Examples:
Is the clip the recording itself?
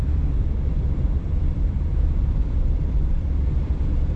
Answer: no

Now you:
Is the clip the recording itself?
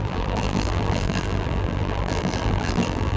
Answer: no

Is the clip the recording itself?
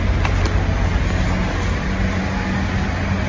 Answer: yes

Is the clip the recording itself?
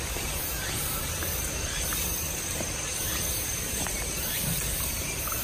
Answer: yes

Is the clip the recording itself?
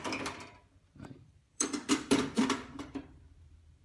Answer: no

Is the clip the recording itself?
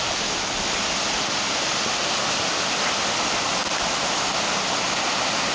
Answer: yes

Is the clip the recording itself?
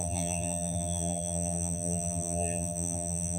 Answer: no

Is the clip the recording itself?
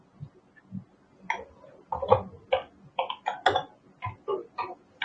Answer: yes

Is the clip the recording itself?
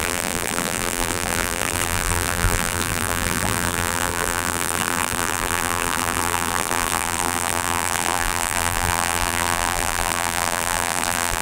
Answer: no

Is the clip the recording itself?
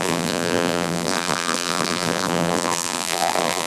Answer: no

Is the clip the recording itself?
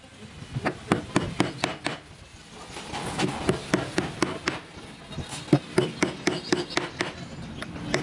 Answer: yes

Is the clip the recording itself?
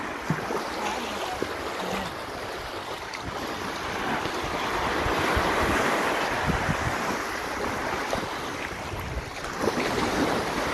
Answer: yes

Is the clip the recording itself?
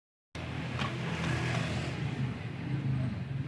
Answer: yes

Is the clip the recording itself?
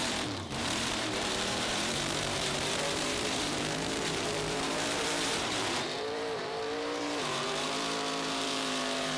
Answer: no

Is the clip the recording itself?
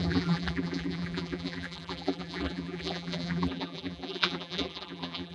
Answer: no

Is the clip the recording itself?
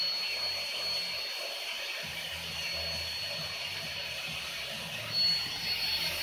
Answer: yes